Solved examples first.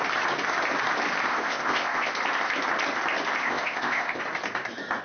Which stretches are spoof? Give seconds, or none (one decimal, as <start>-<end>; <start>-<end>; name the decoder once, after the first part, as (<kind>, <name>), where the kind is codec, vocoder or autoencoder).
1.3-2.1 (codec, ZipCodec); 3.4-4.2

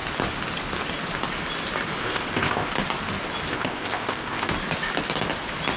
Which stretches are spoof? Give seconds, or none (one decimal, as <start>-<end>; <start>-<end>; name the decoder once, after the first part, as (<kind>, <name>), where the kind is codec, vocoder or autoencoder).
2.0-2.7 (codec, ZipCodec); 3.5-4.5

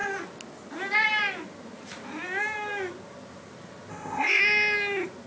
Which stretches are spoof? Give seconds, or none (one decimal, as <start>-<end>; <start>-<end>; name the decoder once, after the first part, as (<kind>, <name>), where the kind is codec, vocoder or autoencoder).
3.9-4.4 (codec, ZipCodec)

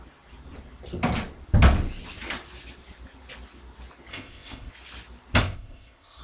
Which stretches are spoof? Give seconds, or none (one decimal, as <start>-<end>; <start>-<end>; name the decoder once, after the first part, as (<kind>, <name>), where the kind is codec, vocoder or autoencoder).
4.1-4.7 (codec, ZipCodec); 5.4-6.2

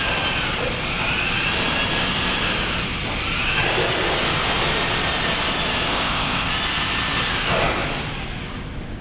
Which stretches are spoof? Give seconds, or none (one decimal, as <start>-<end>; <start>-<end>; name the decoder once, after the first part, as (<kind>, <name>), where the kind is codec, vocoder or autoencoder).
5.9-6.5 (codec, ZipCodec)

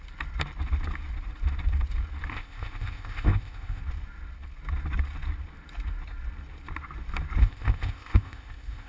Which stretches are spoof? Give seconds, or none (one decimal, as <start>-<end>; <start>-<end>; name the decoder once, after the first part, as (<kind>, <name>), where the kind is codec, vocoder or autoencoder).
2.3-3.8 (codec, ZipCodec); 7.4-8.9

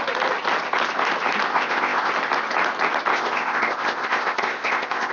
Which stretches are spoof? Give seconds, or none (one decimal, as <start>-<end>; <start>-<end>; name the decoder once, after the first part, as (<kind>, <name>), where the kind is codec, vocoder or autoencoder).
1.5-2.1 (codec, ZipCodec); 3.1-5.1

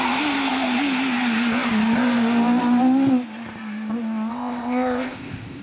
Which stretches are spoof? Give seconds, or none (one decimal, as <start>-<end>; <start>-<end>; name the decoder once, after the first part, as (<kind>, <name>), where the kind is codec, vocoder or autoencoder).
4.3-5.6 (codec, ZipCodec)